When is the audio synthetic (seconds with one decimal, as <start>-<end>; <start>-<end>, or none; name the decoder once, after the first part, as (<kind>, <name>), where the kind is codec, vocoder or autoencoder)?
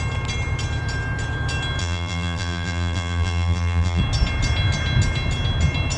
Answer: 1.8-4.0 (vocoder, BigVGAN v2)